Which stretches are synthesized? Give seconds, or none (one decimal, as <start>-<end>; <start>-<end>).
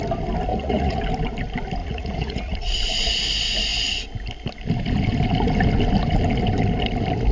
0.5-1.0; 1.8-3.1